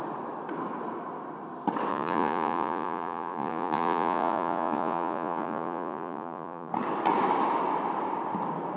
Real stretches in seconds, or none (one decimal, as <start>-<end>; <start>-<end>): 0.0-1.9; 6.7-8.8